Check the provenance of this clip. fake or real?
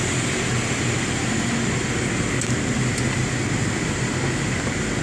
real